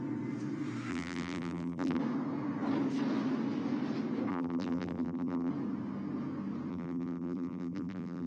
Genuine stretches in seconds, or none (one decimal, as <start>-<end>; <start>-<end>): 0.0-0.9; 2.0-4.3; 5.5-6.7

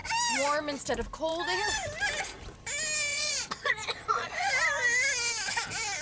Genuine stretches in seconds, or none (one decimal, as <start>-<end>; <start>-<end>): 0.0-3.1; 4.5-6.0

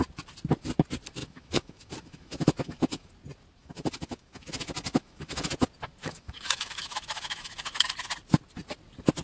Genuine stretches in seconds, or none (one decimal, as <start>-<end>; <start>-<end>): 0.0-1.2; 3.1-3.6; 5.5-6.0; 7.9-9.2

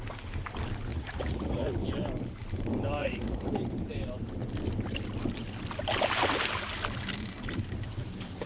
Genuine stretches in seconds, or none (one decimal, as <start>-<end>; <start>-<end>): 0.0-0.9; 1.7-3.0; 3.5-8.5

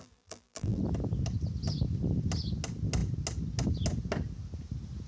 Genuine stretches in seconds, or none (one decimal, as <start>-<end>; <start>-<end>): 0.8-5.1

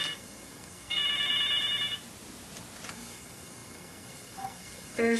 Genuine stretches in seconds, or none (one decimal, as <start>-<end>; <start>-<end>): 1.0-2.9

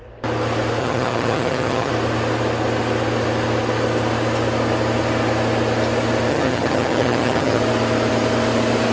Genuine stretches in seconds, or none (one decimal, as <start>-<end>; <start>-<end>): 0.0-0.8; 1.9-6.3; 7.6-8.9

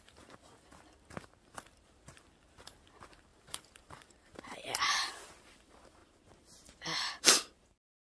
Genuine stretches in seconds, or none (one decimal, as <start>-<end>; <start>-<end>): 0.0-3.3; 5.1-8.0